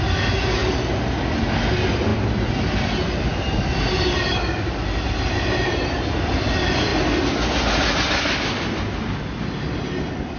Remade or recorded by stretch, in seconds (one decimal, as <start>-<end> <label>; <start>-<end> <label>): 0.0-10.4 recorded